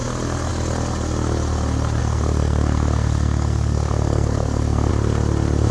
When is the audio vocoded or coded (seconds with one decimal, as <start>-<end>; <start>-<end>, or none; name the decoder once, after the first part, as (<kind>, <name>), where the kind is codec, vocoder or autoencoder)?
2.0-4.9 (codec, SNAC)